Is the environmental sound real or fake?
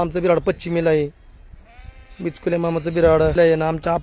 real